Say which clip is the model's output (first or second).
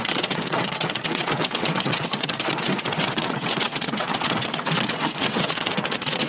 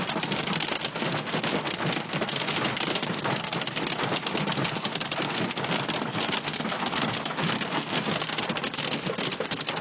first